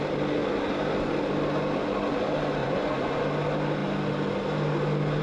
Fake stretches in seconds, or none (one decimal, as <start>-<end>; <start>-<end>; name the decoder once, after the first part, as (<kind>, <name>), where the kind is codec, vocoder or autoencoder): 2.6-3.2 (vocoder, Vocos)